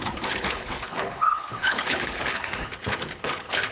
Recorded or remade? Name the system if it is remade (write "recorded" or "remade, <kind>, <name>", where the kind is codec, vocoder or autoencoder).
remade, codec, HILCodec